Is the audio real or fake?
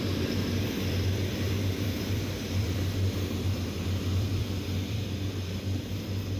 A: fake